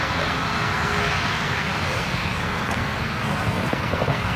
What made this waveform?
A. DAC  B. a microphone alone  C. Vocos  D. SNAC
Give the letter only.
D